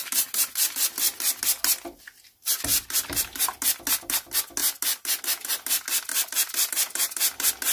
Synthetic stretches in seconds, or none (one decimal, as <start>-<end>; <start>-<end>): none